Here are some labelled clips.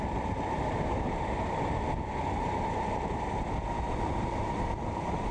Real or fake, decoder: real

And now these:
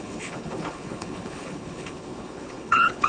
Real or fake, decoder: fake, codec, HILCodec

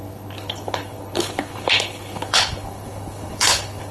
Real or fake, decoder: fake, codec, HILCodec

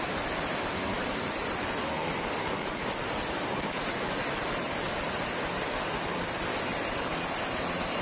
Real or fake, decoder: real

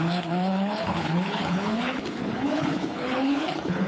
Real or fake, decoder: fake, codec, HILCodec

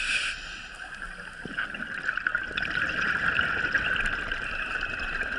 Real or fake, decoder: real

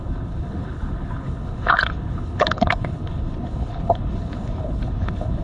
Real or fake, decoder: fake, codec, HILCodec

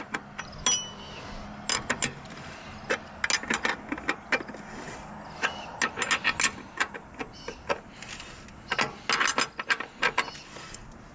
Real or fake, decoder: real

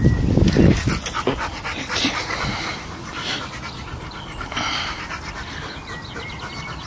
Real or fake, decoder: real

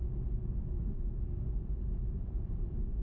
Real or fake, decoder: real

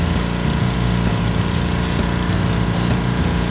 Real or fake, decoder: real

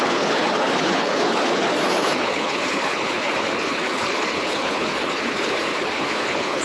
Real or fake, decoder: fake, codec, HILCodec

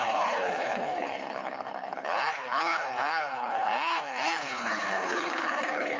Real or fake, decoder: fake, codec, HILCodec